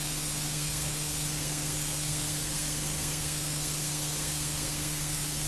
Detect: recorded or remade remade